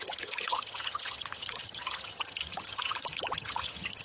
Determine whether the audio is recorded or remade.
remade